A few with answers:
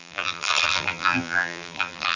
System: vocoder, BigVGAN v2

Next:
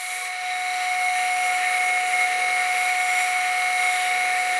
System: autoencoder, DAC-VAE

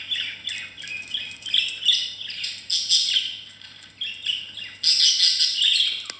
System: none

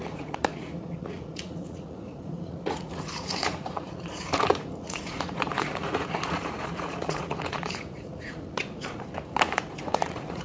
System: vocoder, Vocos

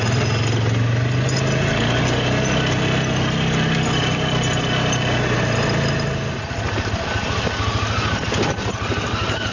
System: none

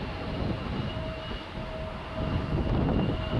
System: none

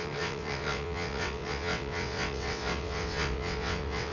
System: vocoder, WaveNeXt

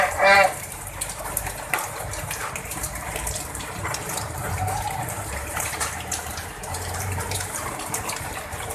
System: vocoder, BigVGAN v2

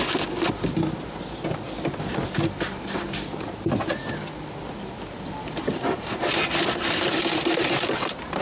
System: none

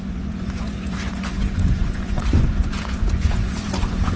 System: vocoder, Vocos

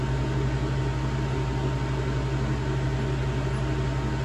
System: none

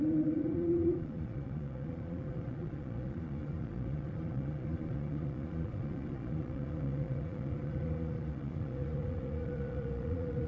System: vocoder, Vocos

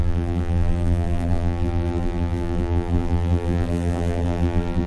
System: vocoder, BigVGAN v2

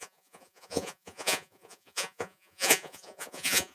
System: vocoder, Vocos